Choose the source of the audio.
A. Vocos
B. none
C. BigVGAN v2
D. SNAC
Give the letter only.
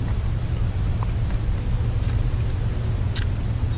B